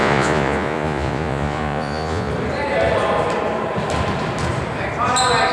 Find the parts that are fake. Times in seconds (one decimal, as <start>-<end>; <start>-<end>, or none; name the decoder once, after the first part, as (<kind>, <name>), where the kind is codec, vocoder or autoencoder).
0.0-2.3 (vocoder, Vocos)